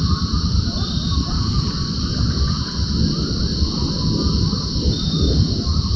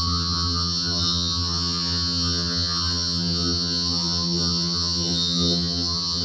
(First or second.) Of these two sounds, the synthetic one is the second